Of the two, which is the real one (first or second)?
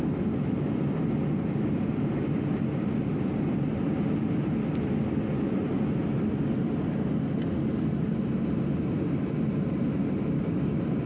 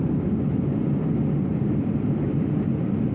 first